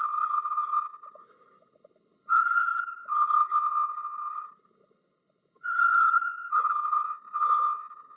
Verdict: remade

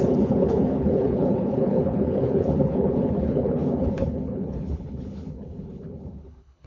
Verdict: remade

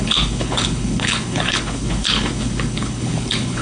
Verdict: remade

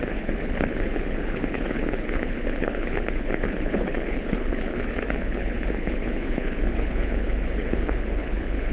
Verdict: remade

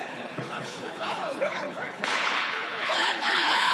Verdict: remade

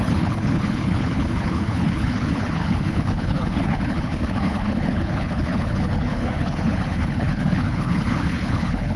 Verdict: remade